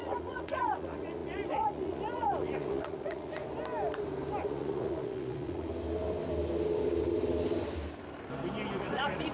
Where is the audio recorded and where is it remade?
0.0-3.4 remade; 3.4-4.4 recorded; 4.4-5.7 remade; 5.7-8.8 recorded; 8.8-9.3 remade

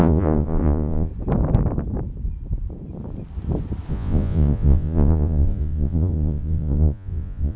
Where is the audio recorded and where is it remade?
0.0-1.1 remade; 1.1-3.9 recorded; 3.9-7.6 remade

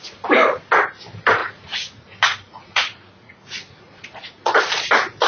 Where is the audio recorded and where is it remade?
0.0-1.4 recorded; 1.4-4.6 remade; 4.6-5.3 recorded

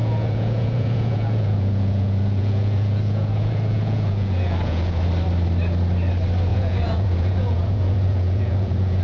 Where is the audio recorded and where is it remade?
0.0-5.0 remade; 5.0-6.5 recorded; 6.5-9.0 remade